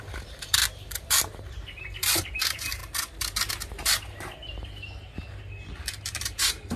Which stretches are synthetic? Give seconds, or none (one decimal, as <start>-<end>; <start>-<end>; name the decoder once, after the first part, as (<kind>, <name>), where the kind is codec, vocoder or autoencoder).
0.0-0.6 (vocoder, BigVGAN v2); 1.5-2.8; 6.1-6.8